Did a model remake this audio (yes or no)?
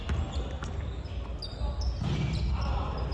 no